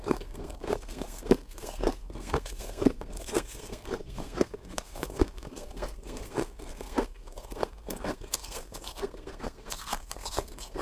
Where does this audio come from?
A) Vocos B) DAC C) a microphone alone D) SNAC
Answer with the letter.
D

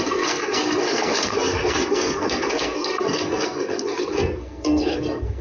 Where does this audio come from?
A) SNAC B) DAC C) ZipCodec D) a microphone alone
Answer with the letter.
A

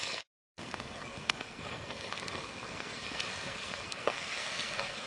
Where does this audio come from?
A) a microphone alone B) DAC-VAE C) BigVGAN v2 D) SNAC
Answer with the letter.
D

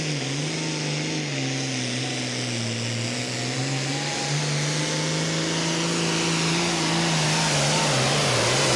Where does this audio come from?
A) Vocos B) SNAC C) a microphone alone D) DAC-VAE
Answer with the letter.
C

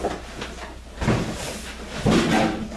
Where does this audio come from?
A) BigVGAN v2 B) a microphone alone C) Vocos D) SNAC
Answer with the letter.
B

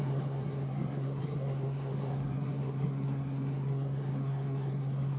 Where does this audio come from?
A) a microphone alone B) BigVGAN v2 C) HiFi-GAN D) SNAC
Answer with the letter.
D